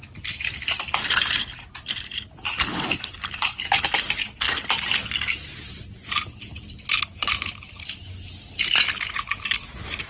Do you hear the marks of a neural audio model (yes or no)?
no